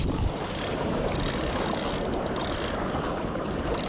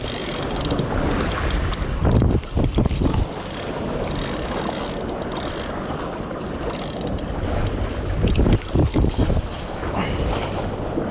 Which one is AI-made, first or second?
first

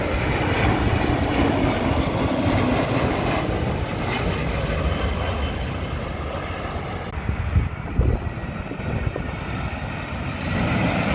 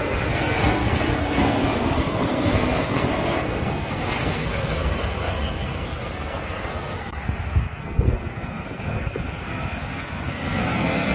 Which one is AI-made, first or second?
second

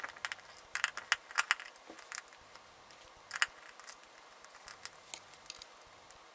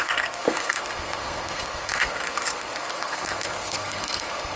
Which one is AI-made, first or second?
second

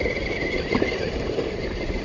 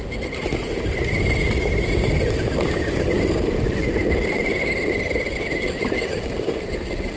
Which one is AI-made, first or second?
first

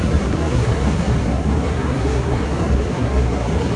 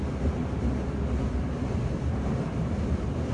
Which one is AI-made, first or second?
first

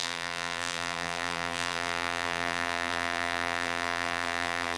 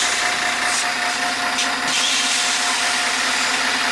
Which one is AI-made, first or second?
first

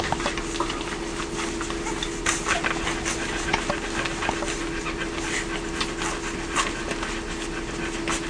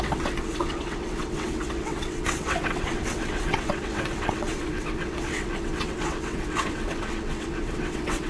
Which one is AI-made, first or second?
second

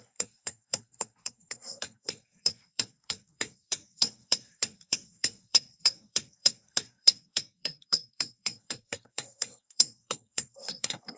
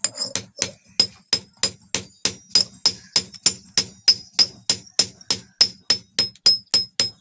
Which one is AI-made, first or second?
first